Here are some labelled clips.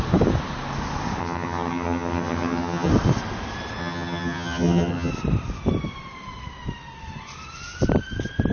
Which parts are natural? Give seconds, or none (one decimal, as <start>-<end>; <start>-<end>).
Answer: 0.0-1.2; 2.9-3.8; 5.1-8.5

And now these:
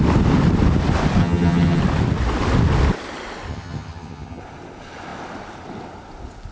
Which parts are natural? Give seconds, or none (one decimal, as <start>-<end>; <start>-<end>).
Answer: 0.0-1.2; 1.8-3.5; 4.4-6.5

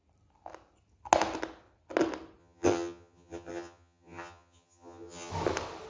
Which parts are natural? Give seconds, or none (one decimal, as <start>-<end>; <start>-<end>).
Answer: 0.0-2.4; 5.3-5.9

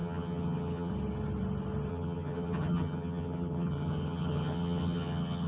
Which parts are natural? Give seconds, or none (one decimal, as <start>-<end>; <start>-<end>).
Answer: 0.9-1.9